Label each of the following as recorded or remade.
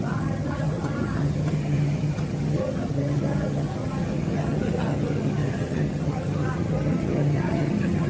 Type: remade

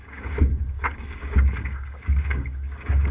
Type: remade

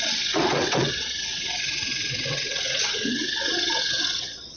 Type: remade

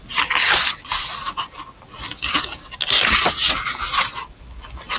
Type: recorded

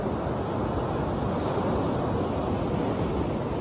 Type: recorded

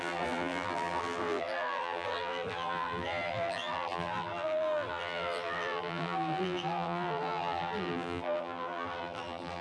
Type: remade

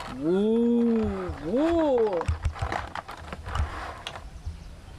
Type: recorded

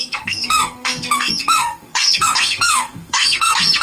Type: remade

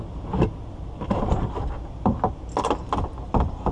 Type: recorded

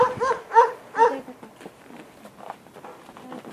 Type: recorded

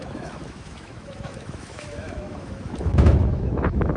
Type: remade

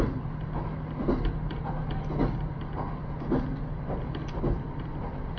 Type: recorded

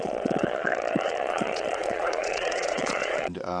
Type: remade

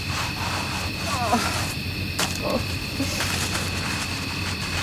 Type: recorded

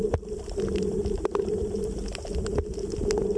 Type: recorded